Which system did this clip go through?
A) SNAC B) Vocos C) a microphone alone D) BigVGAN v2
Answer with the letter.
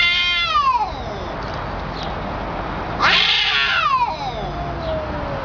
C